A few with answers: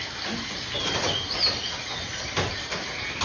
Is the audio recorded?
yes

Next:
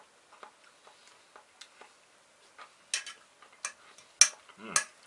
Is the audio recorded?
yes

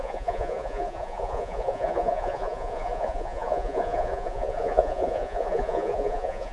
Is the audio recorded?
no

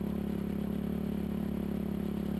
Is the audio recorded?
yes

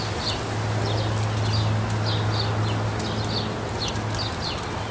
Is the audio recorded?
yes